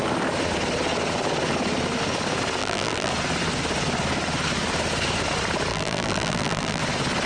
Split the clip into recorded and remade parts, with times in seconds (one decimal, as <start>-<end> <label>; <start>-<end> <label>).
0.0-2.6 recorded; 2.6-3.1 remade; 3.1-5.7 recorded; 5.7-6.8 remade; 6.8-7.3 recorded